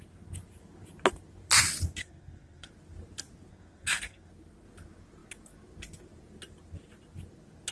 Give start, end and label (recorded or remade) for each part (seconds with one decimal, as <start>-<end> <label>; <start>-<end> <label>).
0.0-2.0 recorded; 2.0-2.7 remade; 2.7-3.5 recorded; 3.5-4.3 remade; 4.3-7.7 recorded

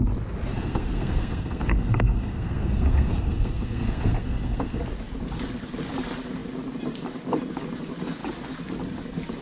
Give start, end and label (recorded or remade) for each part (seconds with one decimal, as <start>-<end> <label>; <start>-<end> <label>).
0.0-0.5 recorded; 0.5-4.8 remade; 4.8-9.4 recorded